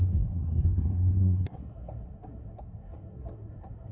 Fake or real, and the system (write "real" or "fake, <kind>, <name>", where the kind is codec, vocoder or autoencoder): fake, codec, SNAC